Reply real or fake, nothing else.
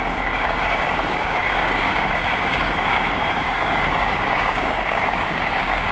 fake